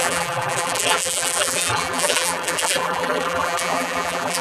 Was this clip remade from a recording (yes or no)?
yes